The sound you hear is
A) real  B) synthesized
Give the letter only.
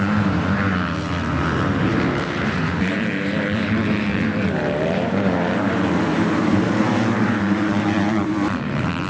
B